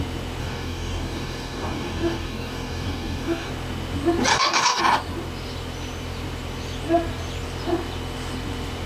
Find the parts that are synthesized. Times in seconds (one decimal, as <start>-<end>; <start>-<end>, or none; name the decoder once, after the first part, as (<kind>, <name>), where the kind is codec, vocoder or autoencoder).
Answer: 0.4-3.5 (codec, DAC); 4.3-4.8